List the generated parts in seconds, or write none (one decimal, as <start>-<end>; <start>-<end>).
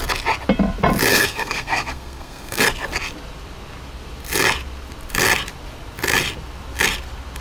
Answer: 1.1-2.6